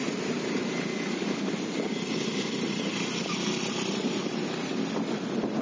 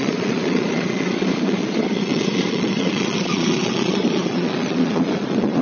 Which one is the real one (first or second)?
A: first